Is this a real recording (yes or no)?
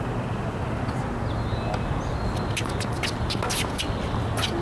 yes